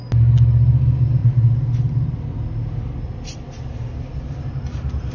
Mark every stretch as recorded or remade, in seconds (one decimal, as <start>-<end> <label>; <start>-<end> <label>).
0.0-5.1 recorded